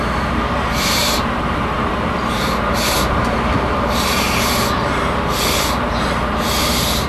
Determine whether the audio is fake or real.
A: fake